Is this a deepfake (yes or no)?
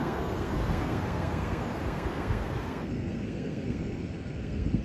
yes